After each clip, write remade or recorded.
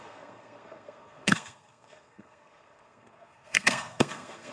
remade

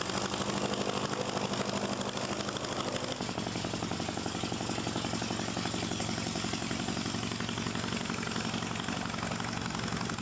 recorded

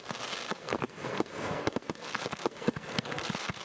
remade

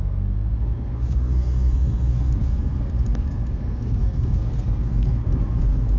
remade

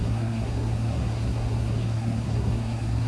remade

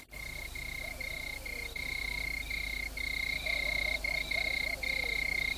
recorded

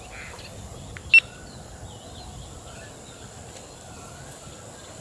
recorded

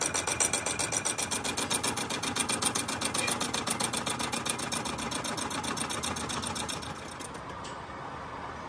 recorded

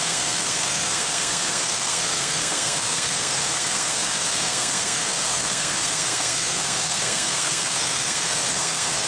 remade